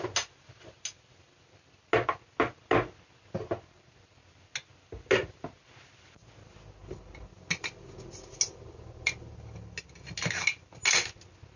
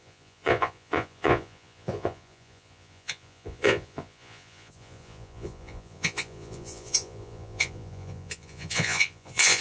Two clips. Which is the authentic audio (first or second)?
first